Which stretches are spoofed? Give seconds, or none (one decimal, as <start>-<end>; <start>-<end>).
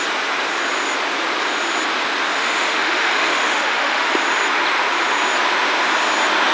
2.3-4.1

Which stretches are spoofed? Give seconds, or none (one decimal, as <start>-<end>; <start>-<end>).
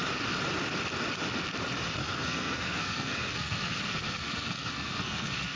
2.0-5.6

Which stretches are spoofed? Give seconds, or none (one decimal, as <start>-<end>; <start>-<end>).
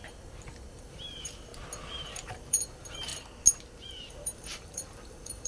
0.8-1.5; 2.0-3.1; 4.1-5.5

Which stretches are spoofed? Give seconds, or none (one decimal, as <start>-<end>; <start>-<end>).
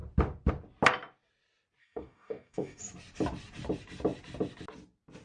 1.8-2.8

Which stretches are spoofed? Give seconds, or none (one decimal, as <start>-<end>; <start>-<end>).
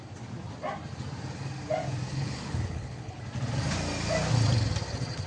2.1-3.2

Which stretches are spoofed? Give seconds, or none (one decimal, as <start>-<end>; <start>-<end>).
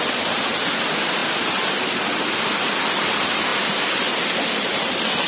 none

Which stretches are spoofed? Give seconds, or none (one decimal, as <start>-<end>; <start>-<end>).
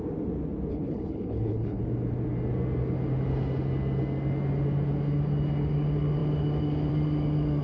0.7-1.8